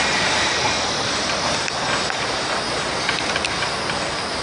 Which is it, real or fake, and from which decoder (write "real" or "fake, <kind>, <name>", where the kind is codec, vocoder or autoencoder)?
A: real